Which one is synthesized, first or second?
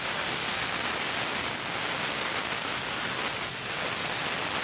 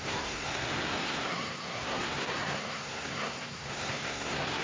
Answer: second